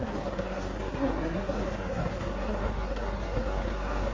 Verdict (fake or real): fake